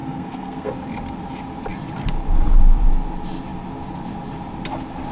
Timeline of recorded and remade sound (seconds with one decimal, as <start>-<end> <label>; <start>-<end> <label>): 0.0-0.7 remade; 0.7-5.1 recorded